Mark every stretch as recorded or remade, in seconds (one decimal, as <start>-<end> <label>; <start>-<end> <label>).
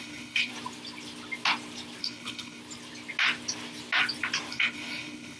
0.0-0.5 remade; 0.5-2.0 recorded; 2.0-2.6 remade; 2.6-4.5 recorded; 4.5-5.4 remade